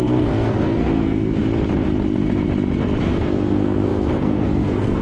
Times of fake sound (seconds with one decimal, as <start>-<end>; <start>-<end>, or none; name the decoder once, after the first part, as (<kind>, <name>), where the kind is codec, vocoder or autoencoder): 0.0-1.4 (codec, SNAC); 3.0-5.0